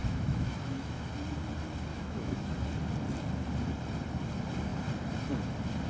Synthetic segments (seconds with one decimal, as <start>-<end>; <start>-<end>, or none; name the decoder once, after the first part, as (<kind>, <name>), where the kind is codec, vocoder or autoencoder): 0.0-1.1 (autoencoder, DAC-VAE); 1.9-2.6